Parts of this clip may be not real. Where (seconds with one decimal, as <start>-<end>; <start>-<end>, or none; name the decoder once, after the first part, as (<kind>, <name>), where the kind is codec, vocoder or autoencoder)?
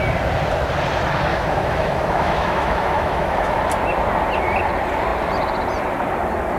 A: 1.3-3.6 (autoencoder, DAC-VAE)